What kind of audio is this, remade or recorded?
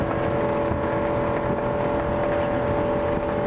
recorded